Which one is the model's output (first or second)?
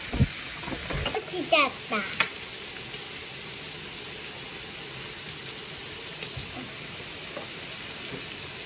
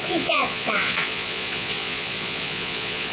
second